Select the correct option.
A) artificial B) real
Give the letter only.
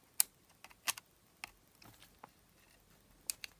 B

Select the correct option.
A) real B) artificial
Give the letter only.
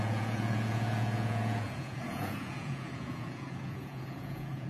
B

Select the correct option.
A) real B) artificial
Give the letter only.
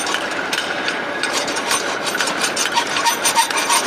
B